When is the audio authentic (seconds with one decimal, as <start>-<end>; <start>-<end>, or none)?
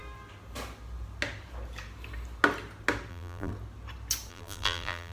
0.0-3.1; 3.5-4.3